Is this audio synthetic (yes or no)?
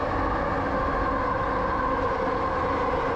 no